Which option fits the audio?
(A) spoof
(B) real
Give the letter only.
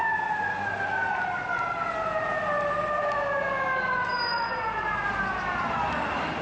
B